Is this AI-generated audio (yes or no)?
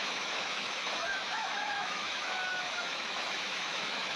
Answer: yes